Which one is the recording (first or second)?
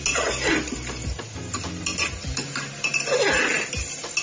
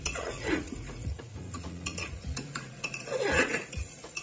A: first